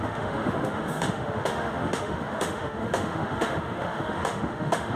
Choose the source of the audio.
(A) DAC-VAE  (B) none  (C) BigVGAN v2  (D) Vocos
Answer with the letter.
A